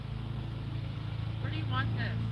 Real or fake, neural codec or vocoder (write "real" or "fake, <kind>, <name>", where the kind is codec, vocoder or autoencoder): real